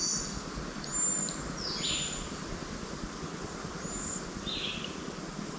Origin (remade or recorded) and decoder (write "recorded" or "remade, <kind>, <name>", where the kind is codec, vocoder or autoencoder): recorded